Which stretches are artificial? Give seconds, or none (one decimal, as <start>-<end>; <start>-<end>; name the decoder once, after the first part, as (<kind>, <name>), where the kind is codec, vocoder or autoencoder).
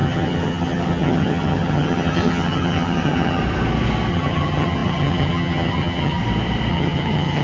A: 0.0-3.4 (vocoder, HiFi-GAN); 4.1-6.2; 6.7-7.4